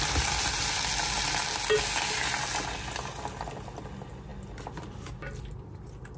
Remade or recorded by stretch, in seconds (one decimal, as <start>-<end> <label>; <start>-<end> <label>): 0.0-6.2 recorded